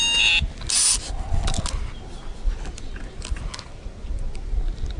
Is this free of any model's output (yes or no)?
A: yes